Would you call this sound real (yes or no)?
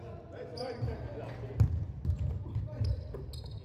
yes